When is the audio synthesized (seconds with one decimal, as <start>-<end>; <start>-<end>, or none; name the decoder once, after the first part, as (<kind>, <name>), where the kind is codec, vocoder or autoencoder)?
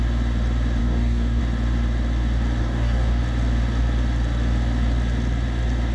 0.8-1.4 (codec, DAC); 2.6-3.2